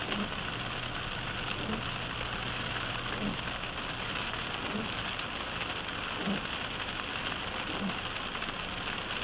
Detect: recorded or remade recorded